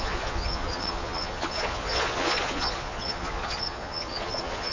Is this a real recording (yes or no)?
no